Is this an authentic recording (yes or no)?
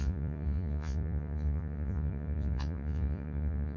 no